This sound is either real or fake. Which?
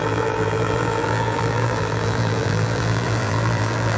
fake